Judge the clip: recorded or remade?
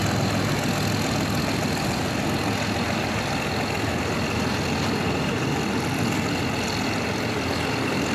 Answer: recorded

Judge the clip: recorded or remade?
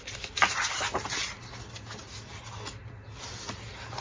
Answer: recorded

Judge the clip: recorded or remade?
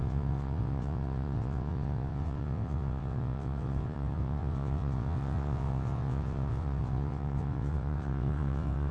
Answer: remade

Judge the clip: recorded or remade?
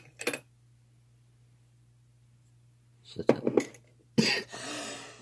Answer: recorded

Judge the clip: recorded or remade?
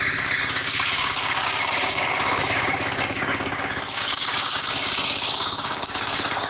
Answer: remade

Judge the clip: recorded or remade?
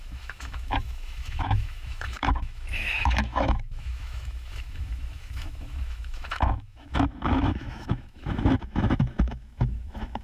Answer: remade